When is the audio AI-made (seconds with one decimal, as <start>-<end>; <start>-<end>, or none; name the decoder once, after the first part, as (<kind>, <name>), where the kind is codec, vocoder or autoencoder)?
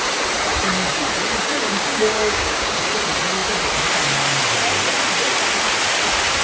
1.5-2.9 (codec, DAC)